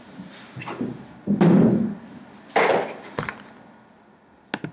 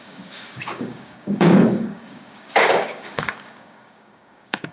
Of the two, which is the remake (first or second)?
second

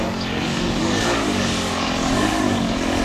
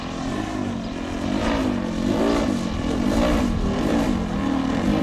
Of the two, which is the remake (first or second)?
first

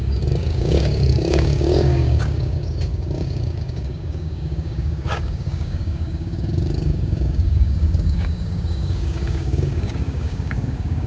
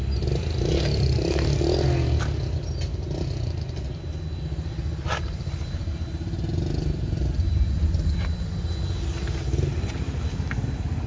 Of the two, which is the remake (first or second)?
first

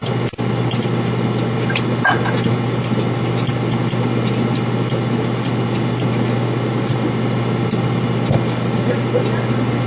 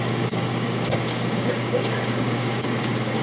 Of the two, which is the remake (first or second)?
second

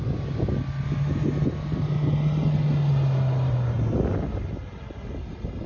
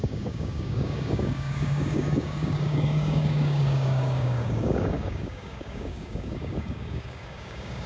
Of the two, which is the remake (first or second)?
second